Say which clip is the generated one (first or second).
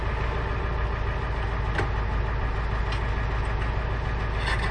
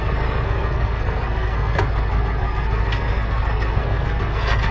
second